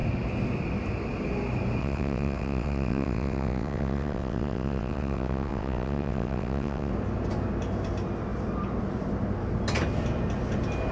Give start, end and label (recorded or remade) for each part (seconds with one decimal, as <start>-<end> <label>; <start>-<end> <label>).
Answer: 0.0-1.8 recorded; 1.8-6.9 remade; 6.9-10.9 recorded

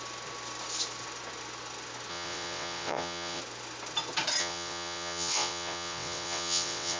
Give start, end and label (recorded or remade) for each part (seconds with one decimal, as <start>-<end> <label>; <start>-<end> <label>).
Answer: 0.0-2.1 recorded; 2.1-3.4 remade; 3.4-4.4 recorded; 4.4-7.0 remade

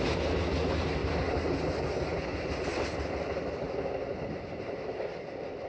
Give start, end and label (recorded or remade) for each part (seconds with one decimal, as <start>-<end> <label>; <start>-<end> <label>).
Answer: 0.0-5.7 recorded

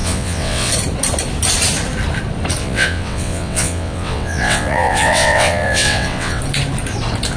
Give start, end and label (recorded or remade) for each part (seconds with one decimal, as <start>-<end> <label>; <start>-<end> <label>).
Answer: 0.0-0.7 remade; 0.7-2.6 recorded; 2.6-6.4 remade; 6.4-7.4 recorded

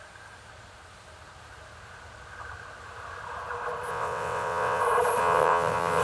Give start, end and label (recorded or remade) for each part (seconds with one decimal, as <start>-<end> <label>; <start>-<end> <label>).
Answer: 0.0-3.9 recorded; 3.9-4.8 remade; 4.8-5.2 recorded; 5.2-6.0 remade